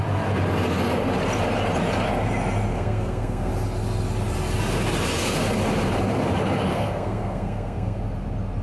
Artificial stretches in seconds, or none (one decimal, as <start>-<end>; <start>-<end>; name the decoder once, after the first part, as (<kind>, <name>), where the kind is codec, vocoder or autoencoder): 2.7-3.5 (codec, SNAC); 6.7-8.0